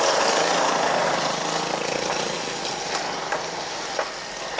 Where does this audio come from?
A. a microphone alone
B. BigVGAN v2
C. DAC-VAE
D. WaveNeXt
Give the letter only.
A